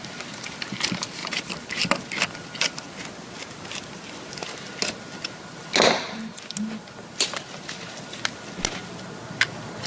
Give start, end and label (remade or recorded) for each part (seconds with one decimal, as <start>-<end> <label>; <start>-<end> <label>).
0.0-9.9 recorded

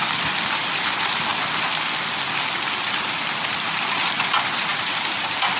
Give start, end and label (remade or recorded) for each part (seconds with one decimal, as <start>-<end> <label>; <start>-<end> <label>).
0.0-5.6 recorded

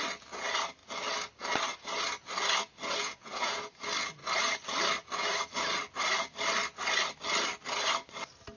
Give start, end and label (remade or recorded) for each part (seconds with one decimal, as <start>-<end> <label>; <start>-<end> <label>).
0.0-3.0 recorded; 3.0-3.7 remade; 3.7-8.6 recorded

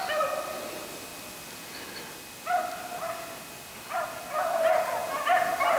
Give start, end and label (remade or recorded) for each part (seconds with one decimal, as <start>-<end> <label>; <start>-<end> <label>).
0.0-5.8 recorded

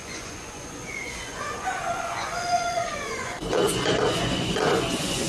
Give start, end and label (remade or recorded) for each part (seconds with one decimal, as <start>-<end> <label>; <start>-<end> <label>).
0.0-5.3 remade

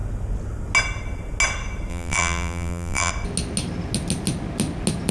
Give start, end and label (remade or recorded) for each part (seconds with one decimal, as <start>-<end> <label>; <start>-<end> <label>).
0.0-1.9 recorded; 1.9-3.1 remade; 3.1-5.1 recorded

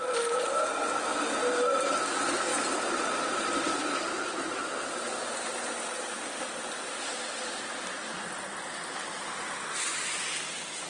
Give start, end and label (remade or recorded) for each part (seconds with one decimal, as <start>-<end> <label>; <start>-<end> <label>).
0.0-2.5 recorded; 2.5-6.1 remade; 6.1-10.9 recorded

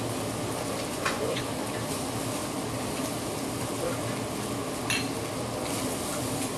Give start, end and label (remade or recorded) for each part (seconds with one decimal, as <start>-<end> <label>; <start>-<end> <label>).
0.0-0.9 recorded; 0.9-1.4 remade; 1.4-6.6 recorded